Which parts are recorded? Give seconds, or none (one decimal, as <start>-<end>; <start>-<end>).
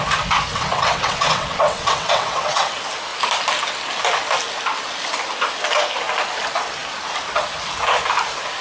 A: 0.0-0.5; 2.7-8.6